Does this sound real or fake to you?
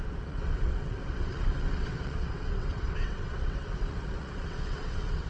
fake